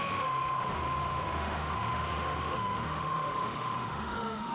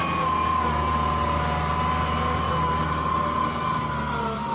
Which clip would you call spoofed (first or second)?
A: first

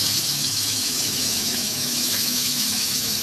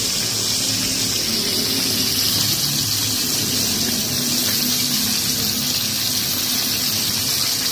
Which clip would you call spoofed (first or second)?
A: first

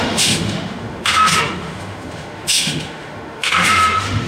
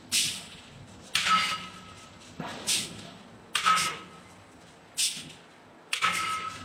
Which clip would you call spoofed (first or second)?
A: first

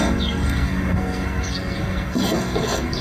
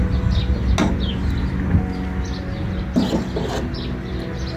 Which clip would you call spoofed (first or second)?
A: first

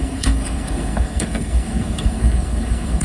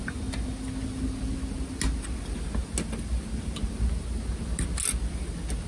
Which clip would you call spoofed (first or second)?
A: first